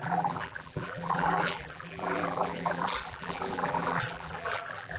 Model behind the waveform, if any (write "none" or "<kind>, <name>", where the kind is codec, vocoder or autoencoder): vocoder, BigVGAN v2